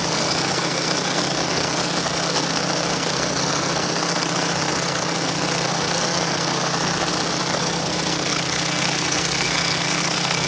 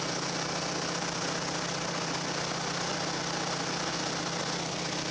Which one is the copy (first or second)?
first